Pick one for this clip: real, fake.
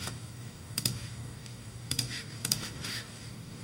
fake